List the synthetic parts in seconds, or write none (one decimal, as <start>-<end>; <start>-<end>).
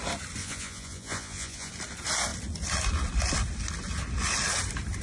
0.4-1.7